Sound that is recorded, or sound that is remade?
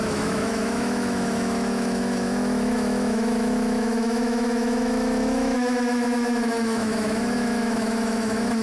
remade